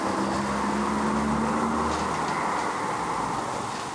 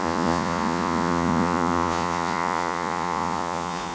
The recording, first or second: first